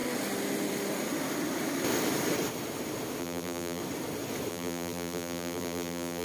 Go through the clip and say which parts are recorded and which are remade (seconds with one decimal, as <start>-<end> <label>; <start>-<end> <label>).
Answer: 0.0-3.2 recorded; 3.2-3.8 remade; 3.8-4.5 recorded; 4.5-6.2 remade